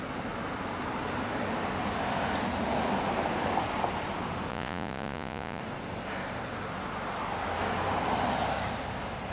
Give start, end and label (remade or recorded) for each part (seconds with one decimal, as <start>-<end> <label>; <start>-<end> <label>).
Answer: 0.0-4.5 recorded; 4.5-5.6 remade; 5.6-9.3 recorded